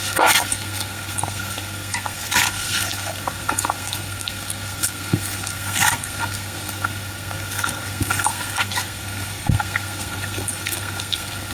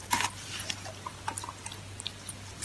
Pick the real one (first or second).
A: second